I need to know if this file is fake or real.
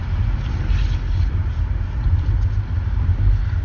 real